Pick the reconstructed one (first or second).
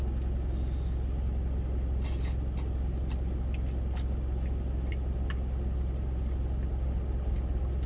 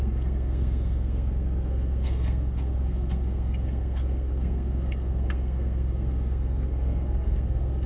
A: second